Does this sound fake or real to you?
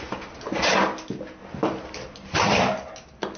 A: real